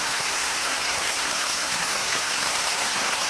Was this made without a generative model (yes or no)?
no